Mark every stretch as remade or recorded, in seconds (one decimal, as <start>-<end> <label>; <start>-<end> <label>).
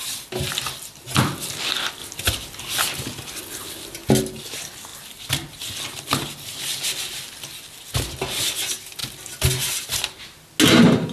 0.0-11.1 recorded